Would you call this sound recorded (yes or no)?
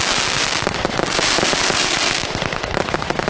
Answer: yes